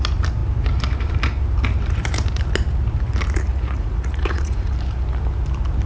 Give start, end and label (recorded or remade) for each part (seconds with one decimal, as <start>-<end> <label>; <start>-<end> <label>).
0.0-3.5 recorded; 3.5-4.7 remade; 4.7-5.9 recorded